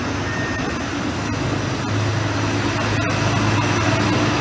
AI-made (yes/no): no